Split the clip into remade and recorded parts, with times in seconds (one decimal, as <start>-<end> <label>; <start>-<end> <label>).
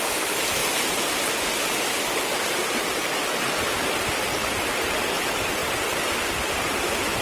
0.0-7.2 recorded